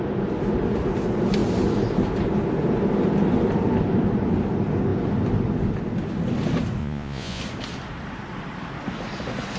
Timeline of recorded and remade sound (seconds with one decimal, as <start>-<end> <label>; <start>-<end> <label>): 0.0-6.8 recorded; 6.8-7.4 remade; 7.4-9.6 recorded